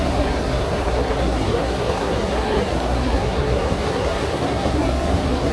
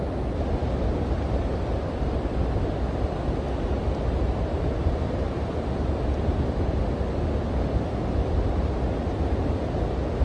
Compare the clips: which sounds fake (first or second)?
first